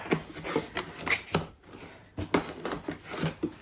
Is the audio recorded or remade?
recorded